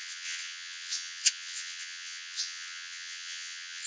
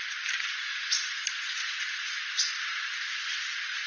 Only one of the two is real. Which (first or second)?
second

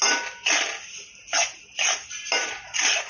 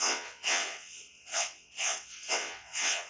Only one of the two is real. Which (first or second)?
first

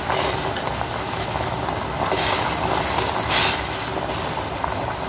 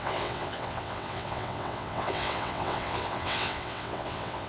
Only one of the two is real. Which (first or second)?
first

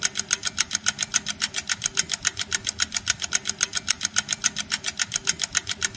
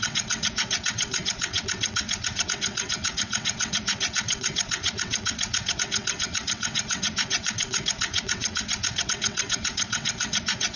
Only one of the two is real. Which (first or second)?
first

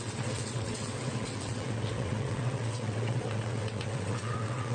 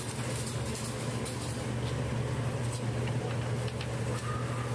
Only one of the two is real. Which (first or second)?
second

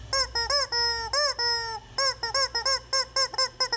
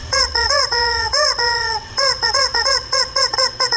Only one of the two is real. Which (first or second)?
first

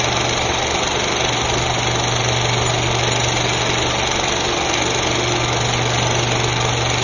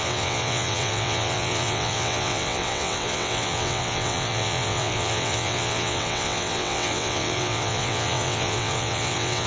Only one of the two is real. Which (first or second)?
first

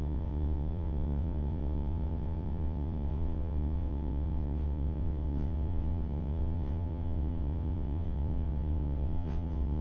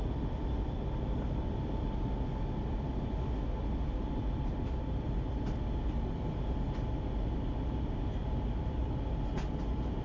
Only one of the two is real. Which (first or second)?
second